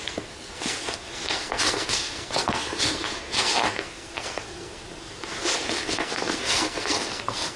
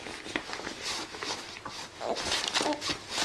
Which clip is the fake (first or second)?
first